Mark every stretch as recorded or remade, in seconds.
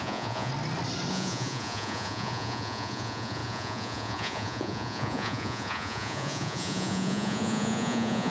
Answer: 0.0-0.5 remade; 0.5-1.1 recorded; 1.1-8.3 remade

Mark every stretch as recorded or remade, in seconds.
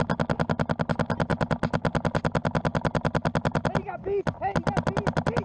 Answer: 0.0-5.4 recorded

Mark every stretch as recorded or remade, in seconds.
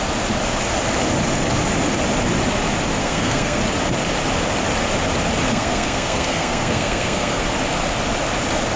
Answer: 0.0-3.0 recorded; 3.0-3.6 remade; 3.6-5.5 recorded; 5.5-7.4 remade; 7.4-8.8 recorded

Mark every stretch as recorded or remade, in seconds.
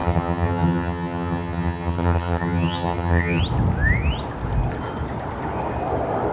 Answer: 0.0-3.4 remade; 3.4-6.3 recorded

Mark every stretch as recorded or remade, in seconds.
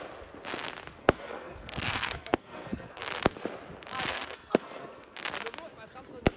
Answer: 0.0-1.0 recorded; 1.0-3.0 remade; 3.0-4.1 recorded; 4.1-5.2 remade; 5.2-6.4 recorded